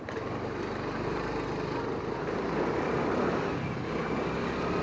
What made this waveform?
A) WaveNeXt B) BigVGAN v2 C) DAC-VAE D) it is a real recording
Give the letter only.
D